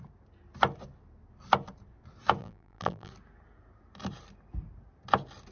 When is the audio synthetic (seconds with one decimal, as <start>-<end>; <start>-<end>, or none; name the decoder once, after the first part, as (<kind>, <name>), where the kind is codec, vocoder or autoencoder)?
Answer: 2.4-3.1 (vocoder, BigVGAN v2)